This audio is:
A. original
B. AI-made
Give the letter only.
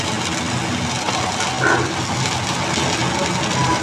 A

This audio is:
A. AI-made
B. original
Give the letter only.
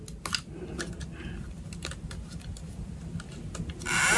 B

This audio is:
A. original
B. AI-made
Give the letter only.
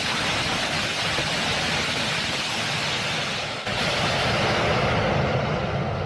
A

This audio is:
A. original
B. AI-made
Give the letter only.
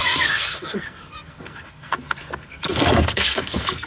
B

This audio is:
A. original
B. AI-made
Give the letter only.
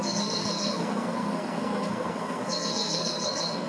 B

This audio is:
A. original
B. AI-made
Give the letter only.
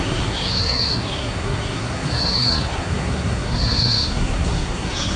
B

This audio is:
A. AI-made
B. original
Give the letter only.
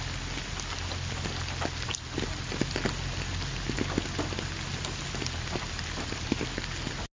B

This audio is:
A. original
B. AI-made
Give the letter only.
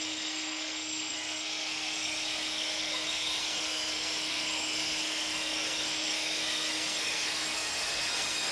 B